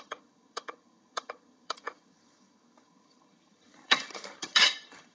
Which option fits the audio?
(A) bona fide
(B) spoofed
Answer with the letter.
B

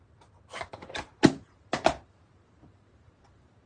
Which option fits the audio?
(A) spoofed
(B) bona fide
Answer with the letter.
B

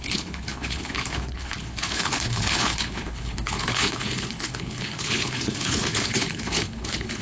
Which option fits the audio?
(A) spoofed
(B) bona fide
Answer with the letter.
A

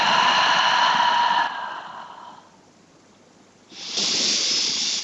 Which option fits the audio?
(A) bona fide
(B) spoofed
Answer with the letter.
A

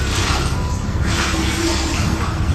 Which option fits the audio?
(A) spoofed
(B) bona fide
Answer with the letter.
A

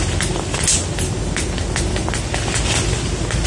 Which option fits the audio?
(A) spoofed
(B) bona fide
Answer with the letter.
B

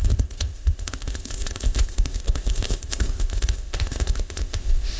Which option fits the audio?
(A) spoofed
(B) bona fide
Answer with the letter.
A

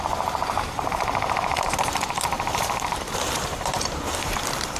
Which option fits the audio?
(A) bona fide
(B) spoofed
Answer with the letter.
B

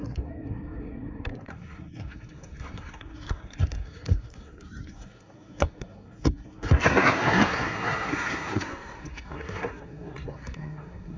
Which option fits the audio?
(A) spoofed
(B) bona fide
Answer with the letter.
A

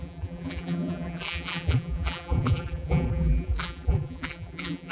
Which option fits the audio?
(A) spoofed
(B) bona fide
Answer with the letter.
A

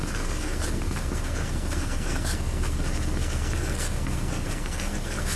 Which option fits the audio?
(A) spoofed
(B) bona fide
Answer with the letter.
A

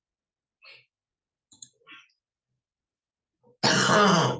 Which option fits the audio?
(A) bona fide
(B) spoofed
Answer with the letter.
A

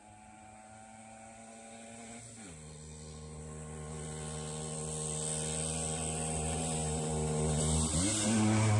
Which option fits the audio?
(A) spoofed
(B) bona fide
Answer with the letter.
B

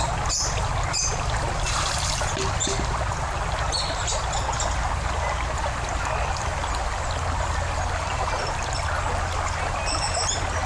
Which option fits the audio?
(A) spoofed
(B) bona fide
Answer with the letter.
B